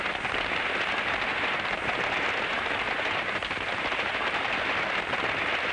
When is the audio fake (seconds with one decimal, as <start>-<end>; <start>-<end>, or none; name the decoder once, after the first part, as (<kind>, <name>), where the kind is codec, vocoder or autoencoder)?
1.3-4.7 (vocoder, BigVGAN v2)